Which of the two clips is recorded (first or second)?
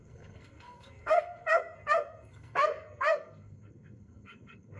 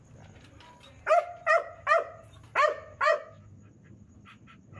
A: second